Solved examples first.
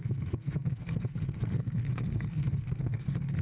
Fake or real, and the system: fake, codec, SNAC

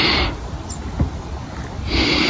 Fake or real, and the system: real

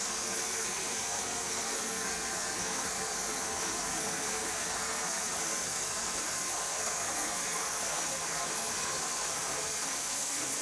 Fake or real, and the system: fake, codec, SNAC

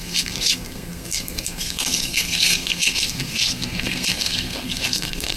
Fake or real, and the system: fake, codec, SNAC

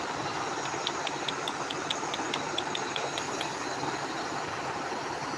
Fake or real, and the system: real